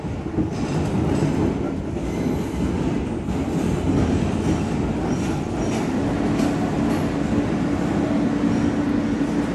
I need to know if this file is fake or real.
real